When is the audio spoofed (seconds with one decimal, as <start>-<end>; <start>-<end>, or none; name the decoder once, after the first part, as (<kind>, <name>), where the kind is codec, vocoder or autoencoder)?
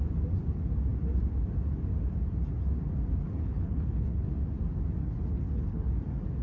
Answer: 3.2-4.3 (codec, HILCodec); 5.0-5.9